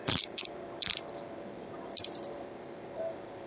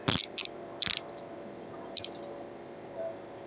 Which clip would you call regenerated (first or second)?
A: first